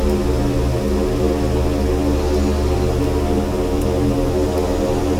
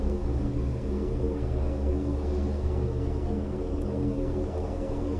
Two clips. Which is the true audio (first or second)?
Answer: first